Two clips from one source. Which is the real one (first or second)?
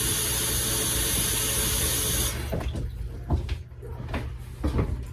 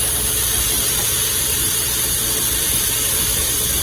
first